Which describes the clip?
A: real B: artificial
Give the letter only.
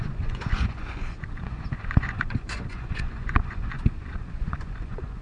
B